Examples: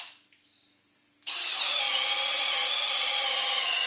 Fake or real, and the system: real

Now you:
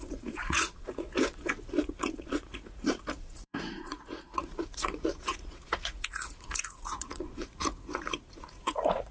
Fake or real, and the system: fake, vocoder, Vocos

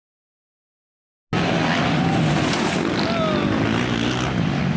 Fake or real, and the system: real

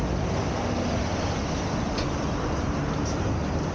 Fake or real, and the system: real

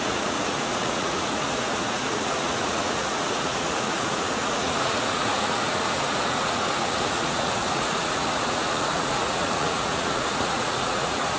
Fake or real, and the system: fake, vocoder, Vocos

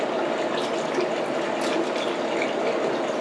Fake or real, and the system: real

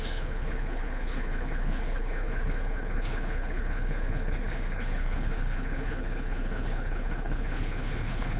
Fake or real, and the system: fake, codec, HILCodec